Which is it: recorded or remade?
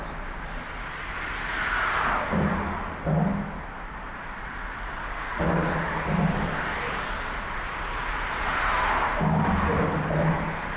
recorded